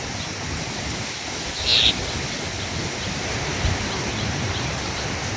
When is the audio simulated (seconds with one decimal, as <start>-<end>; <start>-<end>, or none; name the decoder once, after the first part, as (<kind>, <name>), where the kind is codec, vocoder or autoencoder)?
4.1-5.0 (vocoder, BigVGAN v2)